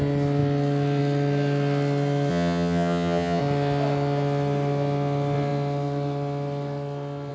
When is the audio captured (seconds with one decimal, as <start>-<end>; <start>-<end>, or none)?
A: 0.0-2.3; 3.4-7.3